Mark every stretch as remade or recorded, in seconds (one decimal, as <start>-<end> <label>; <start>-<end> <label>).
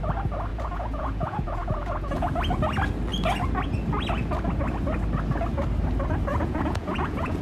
0.0-0.5 recorded; 0.5-2.3 remade; 2.3-6.3 recorded; 6.3-7.4 remade